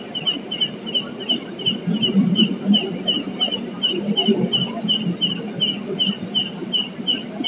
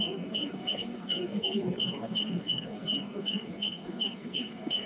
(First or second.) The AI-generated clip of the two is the second